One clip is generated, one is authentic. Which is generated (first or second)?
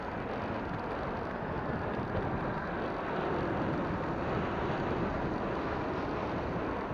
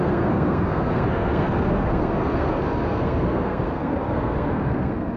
second